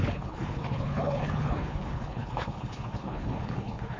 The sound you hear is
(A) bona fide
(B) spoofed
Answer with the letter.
B